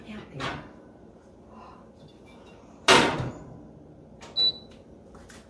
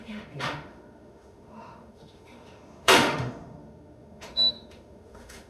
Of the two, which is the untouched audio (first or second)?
first